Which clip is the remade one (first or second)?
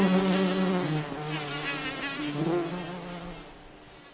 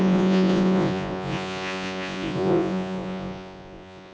second